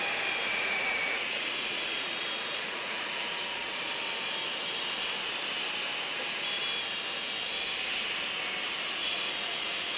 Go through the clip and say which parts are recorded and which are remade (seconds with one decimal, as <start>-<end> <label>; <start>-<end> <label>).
0.0-0.5 recorded; 0.5-3.8 remade; 3.8-9.0 recorded; 9.0-10.0 remade